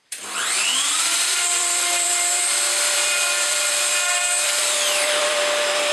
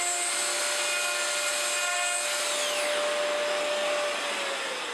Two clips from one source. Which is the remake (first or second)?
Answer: first